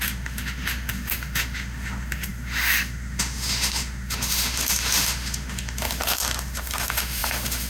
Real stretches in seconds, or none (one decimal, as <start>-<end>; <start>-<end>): none

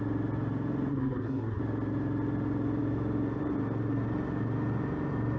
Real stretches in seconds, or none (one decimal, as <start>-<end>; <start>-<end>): 0.0-0.9; 1.6-5.4

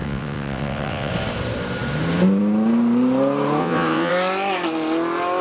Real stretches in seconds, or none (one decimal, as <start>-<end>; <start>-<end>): 1.1-3.6; 4.1-5.4

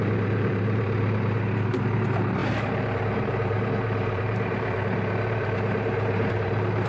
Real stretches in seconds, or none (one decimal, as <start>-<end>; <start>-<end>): none

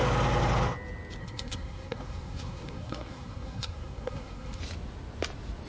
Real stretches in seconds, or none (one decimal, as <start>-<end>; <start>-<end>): 0.0-1.2; 4.6-5.7